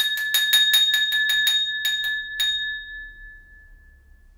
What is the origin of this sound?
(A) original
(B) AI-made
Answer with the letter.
A